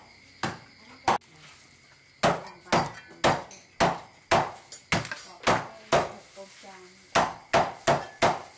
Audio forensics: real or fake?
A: real